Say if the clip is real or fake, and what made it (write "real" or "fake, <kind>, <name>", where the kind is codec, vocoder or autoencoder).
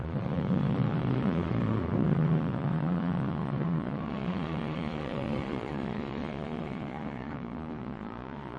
fake, vocoder, Vocos